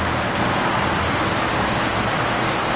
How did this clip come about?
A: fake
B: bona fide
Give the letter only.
B